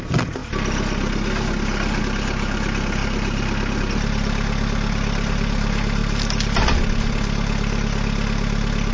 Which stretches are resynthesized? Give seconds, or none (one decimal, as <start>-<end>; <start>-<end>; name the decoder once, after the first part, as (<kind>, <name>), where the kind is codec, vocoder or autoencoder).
none

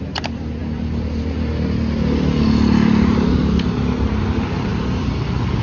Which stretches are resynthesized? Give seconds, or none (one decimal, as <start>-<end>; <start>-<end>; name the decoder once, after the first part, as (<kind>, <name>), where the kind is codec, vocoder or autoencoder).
none

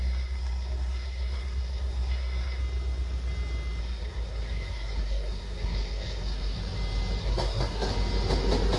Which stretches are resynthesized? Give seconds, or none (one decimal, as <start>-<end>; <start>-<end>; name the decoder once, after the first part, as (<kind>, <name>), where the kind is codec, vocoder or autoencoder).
0.0-2.6 (codec, SNAC); 3.8-6.6; 7.2-7.9

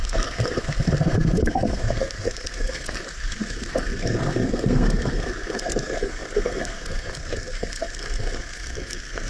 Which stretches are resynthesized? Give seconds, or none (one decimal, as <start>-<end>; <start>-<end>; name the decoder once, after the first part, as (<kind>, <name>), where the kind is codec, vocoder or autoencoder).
0.0-9.3 (codec, SNAC)